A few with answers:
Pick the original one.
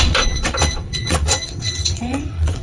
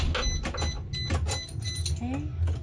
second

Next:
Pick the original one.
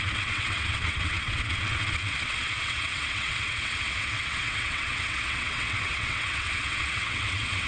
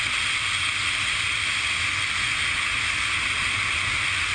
second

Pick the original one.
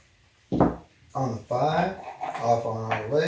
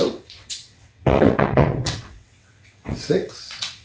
first